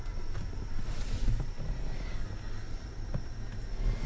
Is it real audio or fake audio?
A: real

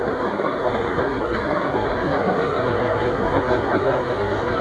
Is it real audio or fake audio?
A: fake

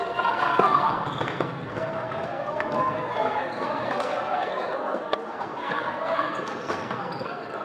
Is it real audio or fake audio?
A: fake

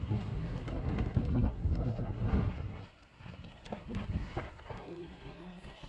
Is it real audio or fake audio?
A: fake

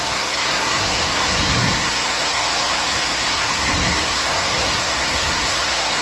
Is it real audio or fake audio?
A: fake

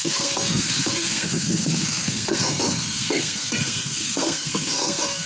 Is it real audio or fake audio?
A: fake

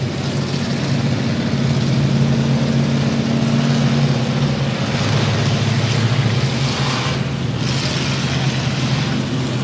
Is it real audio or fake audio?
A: real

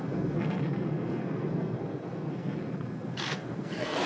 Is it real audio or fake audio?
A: fake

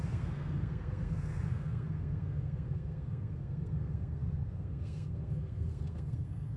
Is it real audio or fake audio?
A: fake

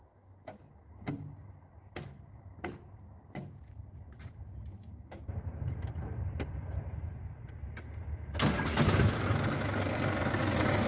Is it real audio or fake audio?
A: real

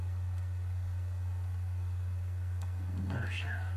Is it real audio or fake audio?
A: fake